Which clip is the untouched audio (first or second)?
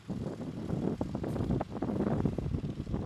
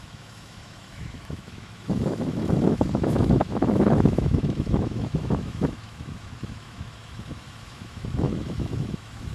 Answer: first